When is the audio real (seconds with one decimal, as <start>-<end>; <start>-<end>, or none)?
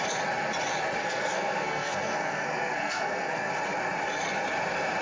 0.0-1.0; 3.5-5.0